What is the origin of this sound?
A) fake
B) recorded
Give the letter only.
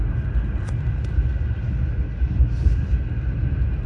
B